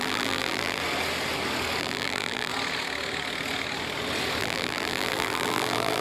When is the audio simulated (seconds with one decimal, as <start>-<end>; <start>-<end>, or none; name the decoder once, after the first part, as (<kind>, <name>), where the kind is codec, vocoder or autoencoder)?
0.0-0.8 (vocoder, BigVGAN v2); 1.8-2.5; 4.4-6.0